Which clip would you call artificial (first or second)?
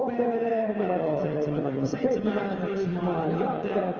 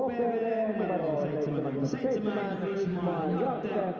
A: first